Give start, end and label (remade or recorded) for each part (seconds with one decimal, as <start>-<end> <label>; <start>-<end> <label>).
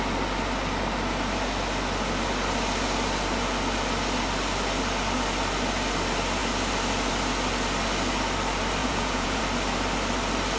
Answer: 0.0-8.8 recorded; 8.8-9.4 remade; 9.4-10.6 recorded